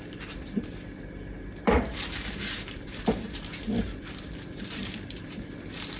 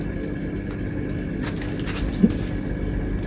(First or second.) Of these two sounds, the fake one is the first